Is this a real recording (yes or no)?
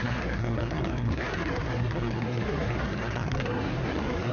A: no